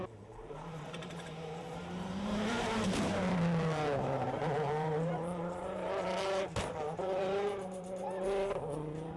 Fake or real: fake